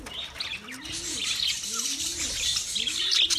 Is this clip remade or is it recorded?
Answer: recorded